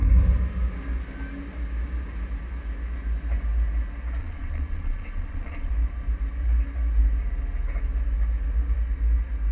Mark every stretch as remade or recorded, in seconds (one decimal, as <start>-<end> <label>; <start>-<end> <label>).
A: 0.0-4.2 recorded; 4.2-5.7 remade; 5.7-9.5 recorded